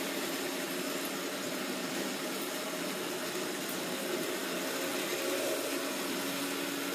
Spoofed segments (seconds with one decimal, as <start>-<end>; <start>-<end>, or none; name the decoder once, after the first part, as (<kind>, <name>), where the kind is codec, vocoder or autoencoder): none